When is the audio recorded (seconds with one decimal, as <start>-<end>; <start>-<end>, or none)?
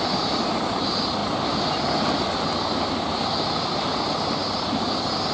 0.0-5.3